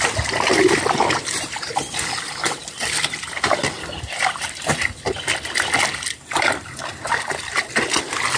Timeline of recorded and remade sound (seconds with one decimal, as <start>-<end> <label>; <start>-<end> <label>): 0.0-2.6 recorded; 2.6-7.0 remade; 7.0-8.4 recorded